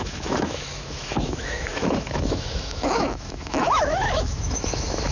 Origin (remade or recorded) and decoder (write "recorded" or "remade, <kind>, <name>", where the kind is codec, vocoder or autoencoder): remade, autoencoder, DAC-VAE